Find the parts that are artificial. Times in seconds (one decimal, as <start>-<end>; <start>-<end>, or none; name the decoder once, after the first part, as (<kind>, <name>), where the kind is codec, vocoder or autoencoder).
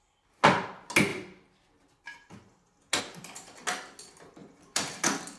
none